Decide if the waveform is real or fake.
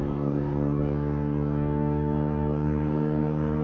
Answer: fake